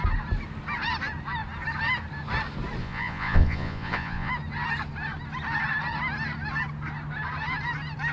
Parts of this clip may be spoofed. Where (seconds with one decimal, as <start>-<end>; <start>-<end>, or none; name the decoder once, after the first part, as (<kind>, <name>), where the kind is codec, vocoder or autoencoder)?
2.8-4.3 (vocoder, Vocos)